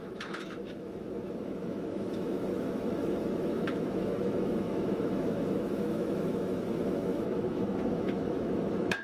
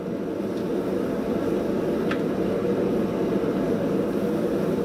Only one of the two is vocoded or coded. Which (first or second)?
first